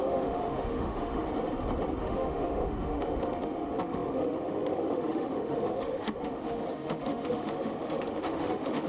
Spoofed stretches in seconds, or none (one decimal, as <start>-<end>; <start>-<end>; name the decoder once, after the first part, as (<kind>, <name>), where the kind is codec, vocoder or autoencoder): 0.0-1.3 (autoencoder, DAC-VAE); 2.0-8.9